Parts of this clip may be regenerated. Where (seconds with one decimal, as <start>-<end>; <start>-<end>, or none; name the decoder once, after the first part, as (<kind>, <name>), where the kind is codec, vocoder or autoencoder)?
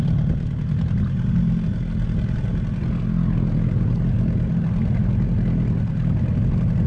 none